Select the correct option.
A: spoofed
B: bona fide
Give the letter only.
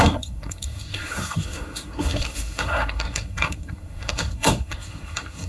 A